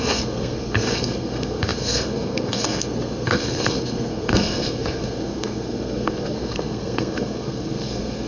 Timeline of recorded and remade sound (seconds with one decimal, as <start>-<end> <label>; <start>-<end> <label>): 0.0-8.3 remade